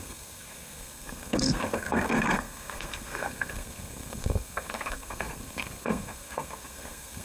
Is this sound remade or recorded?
remade